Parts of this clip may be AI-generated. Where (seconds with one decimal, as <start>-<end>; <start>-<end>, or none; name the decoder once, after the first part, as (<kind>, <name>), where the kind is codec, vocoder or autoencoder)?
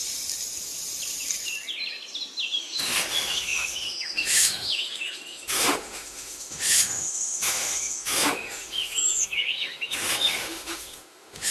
2.6-11.5 (autoencoder, DAC-VAE)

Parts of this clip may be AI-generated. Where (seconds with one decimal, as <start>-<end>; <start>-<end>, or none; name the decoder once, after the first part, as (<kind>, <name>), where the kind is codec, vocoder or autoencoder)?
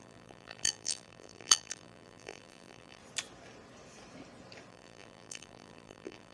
0.0-3.0 (vocoder, BigVGAN v2); 4.7-6.3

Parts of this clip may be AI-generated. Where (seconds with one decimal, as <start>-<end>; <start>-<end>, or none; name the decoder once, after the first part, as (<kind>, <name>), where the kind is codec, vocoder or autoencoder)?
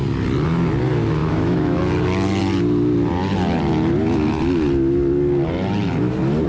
1.2-1.8 (autoencoder, DAC-VAE)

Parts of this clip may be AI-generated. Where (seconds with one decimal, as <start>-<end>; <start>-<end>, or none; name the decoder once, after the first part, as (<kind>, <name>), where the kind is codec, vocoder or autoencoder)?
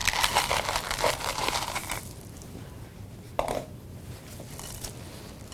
1.3-3.9 (vocoder, BigVGAN v2)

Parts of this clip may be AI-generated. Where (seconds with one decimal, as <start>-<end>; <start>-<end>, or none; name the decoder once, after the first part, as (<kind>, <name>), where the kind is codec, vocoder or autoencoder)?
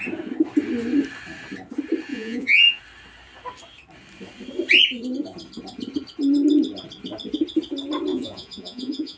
2.1-2.8 (vocoder, Vocos); 8.1-9.2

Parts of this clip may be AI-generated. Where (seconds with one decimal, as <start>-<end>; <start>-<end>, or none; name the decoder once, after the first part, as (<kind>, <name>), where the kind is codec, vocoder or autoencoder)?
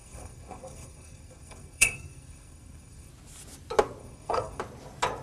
0.0-3.1 (codec, SNAC); 4.0-4.6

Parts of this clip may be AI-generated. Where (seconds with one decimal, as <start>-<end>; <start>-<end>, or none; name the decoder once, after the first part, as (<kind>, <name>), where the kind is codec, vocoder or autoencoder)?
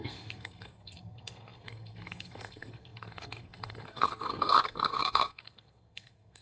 0.0-6.4 (codec, SNAC)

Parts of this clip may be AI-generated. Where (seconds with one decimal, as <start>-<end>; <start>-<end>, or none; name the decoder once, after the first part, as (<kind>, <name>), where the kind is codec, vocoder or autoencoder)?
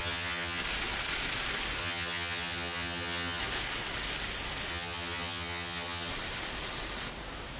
0.0-0.6 (vocoder, HiFi-GAN); 1.8-3.4; 4.7-6.1